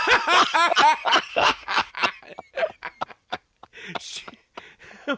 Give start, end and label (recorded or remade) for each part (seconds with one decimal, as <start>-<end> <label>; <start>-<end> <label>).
0.0-1.3 recorded; 1.3-1.9 remade; 1.9-5.2 recorded